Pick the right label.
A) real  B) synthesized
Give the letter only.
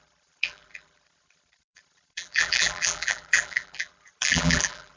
B